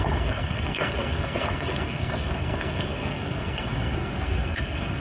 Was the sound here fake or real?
fake